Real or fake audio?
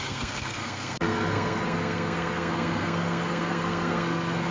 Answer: fake